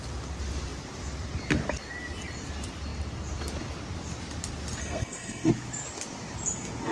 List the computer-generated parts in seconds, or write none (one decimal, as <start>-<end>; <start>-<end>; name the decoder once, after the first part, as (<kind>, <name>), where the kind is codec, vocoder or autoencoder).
4.8-5.5 (codec, SNAC)